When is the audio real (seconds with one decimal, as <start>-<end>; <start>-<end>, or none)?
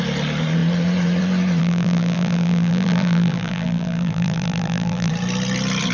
0.0-1.6; 5.1-5.9